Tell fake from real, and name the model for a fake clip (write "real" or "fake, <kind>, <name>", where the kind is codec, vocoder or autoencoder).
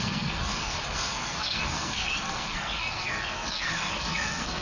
fake, codec, SNAC